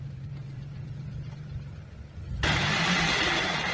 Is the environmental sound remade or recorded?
remade